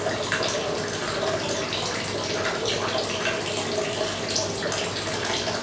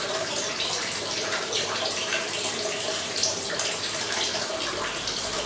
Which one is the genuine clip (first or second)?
first